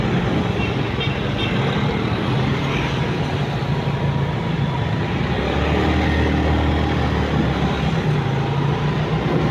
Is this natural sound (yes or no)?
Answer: yes